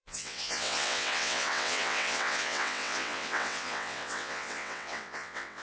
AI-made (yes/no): yes